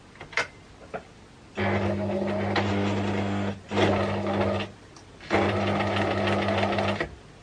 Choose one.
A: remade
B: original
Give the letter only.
B